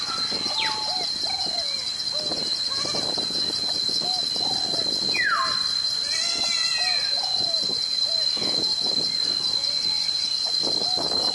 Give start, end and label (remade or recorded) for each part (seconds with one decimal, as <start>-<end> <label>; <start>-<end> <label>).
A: 0.0-11.3 recorded